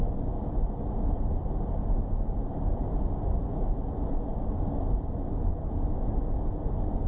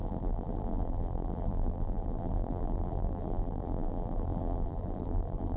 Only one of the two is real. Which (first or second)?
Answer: first